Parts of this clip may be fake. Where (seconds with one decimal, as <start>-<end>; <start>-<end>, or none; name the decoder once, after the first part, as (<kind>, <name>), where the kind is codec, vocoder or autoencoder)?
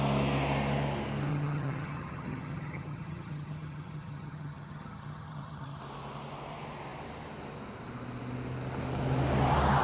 1.3-5.8 (vocoder, HiFi-GAN)